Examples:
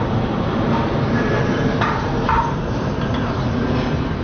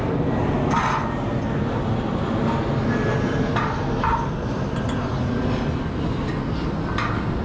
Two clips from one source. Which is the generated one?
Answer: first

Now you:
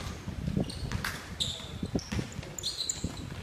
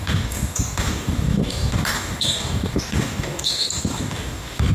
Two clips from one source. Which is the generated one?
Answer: second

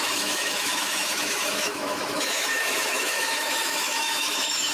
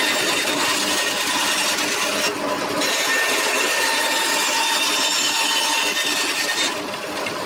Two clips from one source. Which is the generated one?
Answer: first